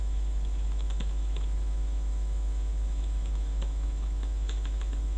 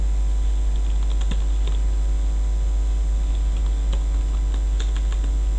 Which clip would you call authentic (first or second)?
second